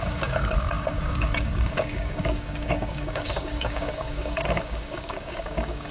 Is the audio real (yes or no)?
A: no